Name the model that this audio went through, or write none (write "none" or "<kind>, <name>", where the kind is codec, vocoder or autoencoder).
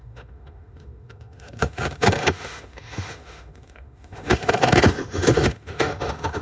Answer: autoencoder, DAC-VAE